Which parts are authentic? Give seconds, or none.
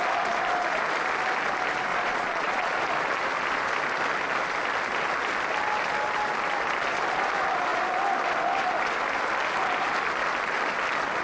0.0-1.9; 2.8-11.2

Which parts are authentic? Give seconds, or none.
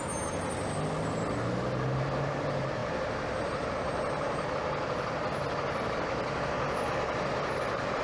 0.0-8.0